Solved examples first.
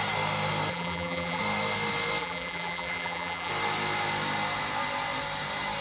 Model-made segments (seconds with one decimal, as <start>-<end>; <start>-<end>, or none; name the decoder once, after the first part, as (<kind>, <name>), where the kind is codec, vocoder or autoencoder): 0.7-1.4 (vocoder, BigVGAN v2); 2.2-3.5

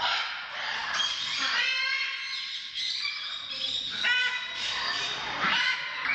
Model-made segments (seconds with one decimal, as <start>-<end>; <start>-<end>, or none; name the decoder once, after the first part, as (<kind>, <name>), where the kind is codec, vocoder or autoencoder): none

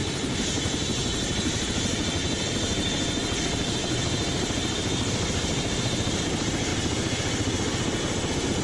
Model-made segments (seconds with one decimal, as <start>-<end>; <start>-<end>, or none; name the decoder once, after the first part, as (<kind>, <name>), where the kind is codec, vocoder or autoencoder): 0.0-1.7 (vocoder, BigVGAN v2); 3.8-6.2

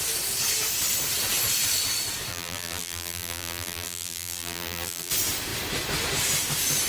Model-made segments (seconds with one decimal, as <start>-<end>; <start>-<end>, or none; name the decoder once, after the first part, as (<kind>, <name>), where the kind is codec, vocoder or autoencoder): 2.3-5.1 (vocoder, BigVGAN v2)

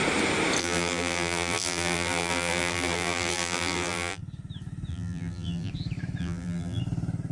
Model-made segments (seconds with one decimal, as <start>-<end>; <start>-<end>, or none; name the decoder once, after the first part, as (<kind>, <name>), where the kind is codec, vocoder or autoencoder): 0.6-4.2 (vocoder, BigVGAN v2); 4.9-5.7; 6.2-6.8